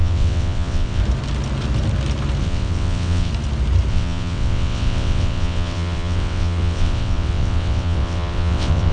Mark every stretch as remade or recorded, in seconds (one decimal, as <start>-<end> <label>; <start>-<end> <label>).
0.0-1.0 remade; 1.0-2.4 recorded; 2.4-3.3 remade; 3.3-3.9 recorded; 3.9-8.9 remade